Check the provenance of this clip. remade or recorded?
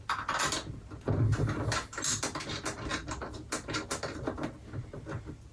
recorded